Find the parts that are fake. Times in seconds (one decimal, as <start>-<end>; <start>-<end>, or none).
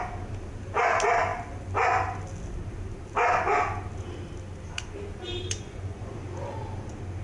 5.4-6.1